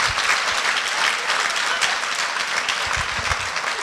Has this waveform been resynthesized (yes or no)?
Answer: no